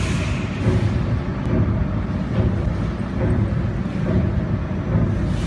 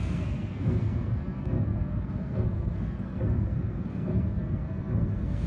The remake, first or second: second